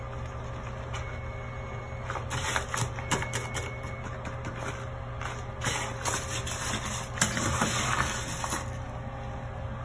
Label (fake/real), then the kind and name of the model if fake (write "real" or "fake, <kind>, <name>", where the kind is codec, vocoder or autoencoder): real